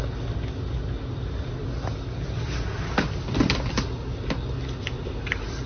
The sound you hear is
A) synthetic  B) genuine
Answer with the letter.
B